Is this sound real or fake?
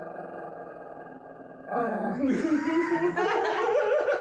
real